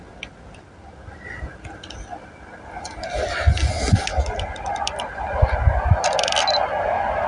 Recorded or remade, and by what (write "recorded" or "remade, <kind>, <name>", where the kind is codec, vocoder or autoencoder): recorded